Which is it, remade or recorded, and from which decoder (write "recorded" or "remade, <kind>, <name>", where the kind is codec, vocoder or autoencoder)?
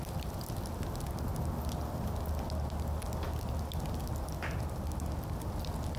recorded